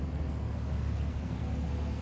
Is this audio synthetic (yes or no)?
yes